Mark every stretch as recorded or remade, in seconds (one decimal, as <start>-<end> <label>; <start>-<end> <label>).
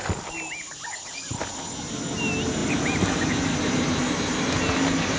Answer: 0.0-5.2 recorded